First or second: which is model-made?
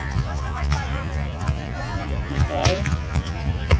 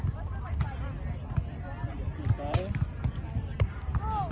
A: first